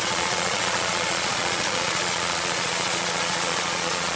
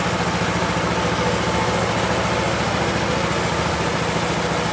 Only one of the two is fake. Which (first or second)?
first